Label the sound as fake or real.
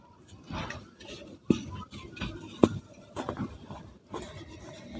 real